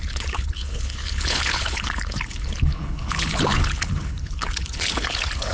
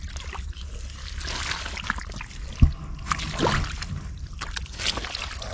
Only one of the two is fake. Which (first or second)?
first